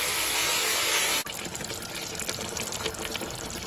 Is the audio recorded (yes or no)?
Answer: yes